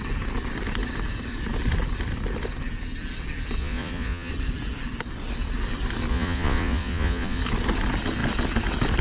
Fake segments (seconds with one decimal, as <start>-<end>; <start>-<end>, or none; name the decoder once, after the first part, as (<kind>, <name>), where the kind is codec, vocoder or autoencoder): 3.6-4.3 (vocoder, Vocos); 6.1-7.4